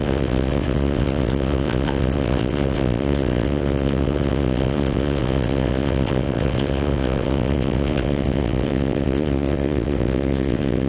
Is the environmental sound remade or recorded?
remade